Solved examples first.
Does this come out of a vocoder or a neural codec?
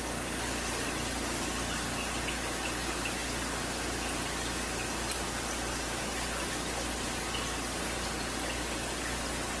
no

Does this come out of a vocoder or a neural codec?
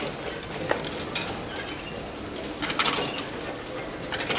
no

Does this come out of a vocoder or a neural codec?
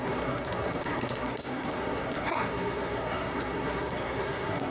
yes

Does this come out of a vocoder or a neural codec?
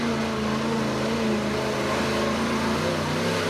no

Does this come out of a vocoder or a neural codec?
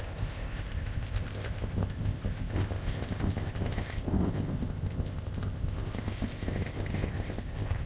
yes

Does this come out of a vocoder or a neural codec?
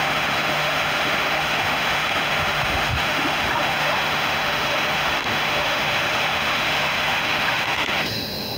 yes